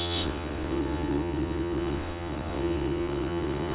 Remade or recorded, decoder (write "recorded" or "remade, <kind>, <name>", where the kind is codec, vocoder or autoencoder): remade, vocoder, WaveNeXt